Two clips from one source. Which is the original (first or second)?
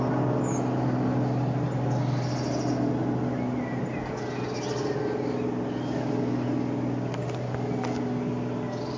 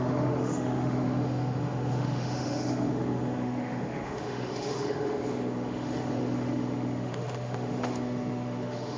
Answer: first